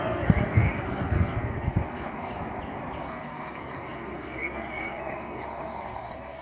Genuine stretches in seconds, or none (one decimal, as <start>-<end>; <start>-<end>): 2.3-3.0

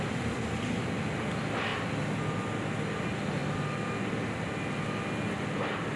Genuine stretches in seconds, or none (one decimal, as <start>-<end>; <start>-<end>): 0.0-6.0

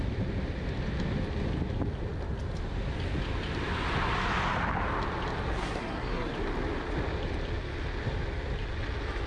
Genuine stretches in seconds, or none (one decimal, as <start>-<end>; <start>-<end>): 0.0-5.5; 6.3-9.3

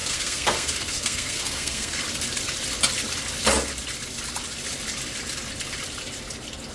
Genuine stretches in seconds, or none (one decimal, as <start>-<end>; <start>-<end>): 2.0-6.7